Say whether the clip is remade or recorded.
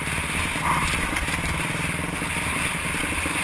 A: recorded